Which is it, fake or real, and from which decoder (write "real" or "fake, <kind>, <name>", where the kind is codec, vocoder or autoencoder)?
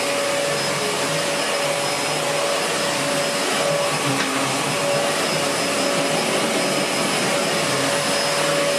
real